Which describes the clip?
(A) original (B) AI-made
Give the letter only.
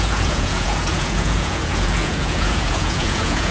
B